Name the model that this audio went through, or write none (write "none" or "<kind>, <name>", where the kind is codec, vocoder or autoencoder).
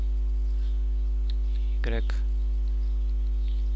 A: none